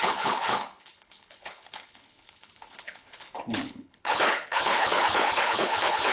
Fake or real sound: fake